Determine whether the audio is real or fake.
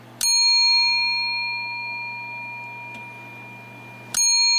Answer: real